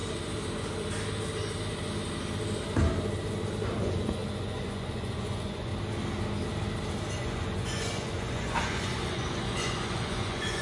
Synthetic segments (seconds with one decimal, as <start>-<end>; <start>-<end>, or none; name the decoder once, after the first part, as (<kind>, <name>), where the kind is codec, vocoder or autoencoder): 3.8-5.7 (vocoder, Vocos); 7.1-10.6